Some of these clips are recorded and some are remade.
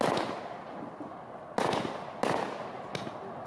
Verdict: recorded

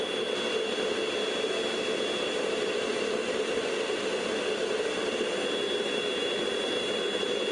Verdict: recorded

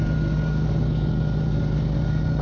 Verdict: recorded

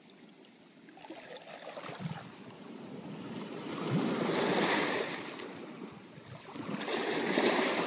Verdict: recorded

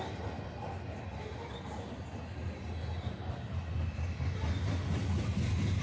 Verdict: recorded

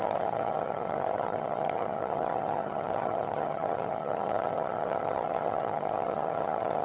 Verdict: remade